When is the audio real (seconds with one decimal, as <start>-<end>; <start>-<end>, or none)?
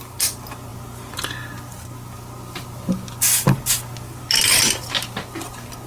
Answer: 0.0-5.9